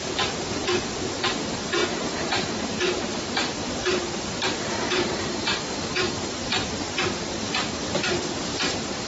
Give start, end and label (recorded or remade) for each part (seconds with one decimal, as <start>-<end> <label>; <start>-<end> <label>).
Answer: 0.0-9.1 remade